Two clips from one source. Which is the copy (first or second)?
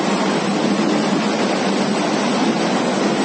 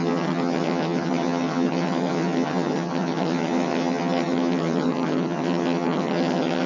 second